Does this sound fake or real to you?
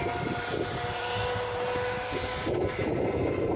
real